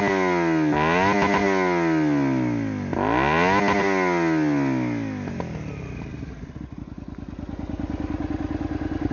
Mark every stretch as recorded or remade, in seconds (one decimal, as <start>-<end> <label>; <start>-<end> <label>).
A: 0.0-9.1 recorded